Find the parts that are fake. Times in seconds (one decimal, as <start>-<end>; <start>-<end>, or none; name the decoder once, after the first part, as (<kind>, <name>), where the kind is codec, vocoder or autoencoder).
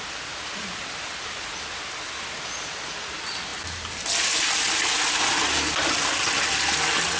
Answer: none